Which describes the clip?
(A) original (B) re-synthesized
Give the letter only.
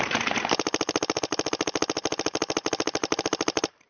B